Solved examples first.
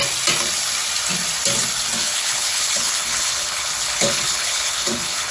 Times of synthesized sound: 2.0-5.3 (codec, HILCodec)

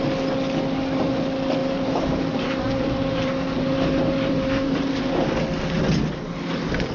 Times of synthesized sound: 1.6-5.1 (vocoder, BigVGAN v2)

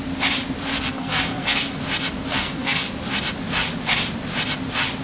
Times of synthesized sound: 0.7-1.8 (codec, SNAC); 2.3-2.9

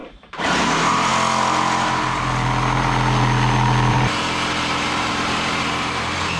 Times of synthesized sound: 0.0-1.1 (vocoder, BigVGAN v2); 3.9-6.4

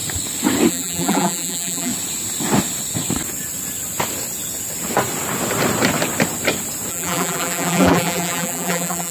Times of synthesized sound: 0.7-1.9 (vocoder, BigVGAN v2); 6.9-9.1

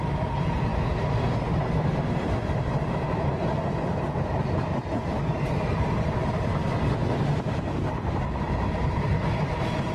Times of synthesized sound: 0.0-0.7 (vocoder, BigVGAN v2); 5.3-6.2; 8.1-9.9